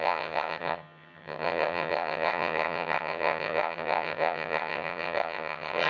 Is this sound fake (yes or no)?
yes